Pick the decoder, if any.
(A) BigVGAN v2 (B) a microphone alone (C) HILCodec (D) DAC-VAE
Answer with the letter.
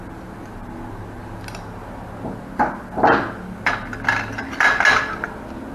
B